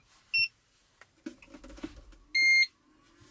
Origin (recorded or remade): recorded